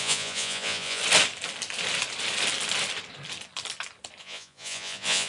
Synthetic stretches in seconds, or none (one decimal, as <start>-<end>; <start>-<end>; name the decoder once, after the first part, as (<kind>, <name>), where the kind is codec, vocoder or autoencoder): 0.0-1.0 (vocoder, Vocos); 4.2-5.3